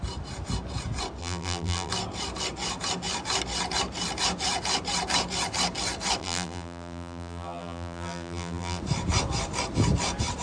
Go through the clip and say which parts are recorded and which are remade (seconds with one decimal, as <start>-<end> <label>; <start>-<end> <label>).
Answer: 0.0-1.2 recorded; 1.2-1.9 remade; 1.9-6.2 recorded; 6.2-8.8 remade; 8.8-10.4 recorded

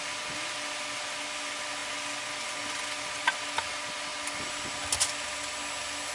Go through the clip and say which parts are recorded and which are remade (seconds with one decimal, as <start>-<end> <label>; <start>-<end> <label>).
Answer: 0.0-6.1 recorded